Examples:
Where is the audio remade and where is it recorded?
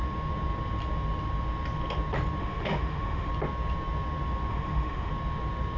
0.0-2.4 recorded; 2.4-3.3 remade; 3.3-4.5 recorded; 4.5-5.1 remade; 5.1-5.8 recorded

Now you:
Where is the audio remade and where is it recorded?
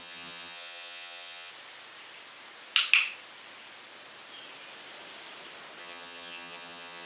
0.0-1.5 remade; 1.5-5.8 recorded; 5.8-7.1 remade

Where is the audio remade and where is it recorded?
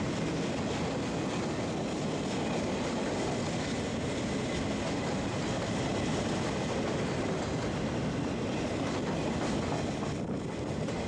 0.0-11.1 recorded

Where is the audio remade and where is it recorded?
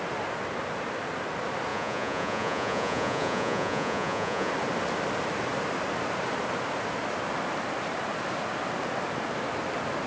0.0-1.7 recorded; 1.7-4.5 remade; 4.5-10.1 recorded